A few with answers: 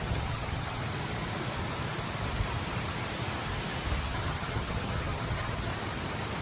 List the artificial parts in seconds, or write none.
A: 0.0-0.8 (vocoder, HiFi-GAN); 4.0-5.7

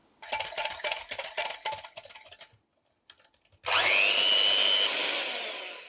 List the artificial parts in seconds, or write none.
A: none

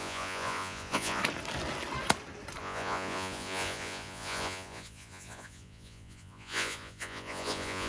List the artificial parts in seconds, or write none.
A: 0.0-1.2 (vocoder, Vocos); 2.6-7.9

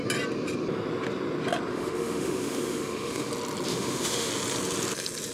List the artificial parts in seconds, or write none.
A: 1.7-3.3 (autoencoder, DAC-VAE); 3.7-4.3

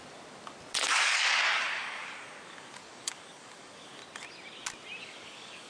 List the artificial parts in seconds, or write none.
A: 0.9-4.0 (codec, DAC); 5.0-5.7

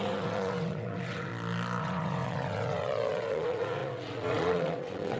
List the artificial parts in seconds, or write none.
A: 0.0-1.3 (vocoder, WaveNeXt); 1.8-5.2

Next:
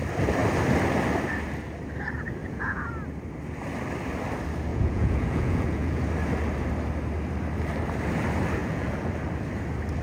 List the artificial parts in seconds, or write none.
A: 2.4-2.9 (vocoder, Vocos); 4.7-6.0; 8.6-9.1

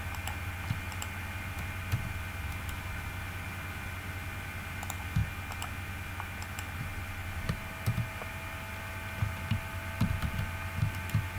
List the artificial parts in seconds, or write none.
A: none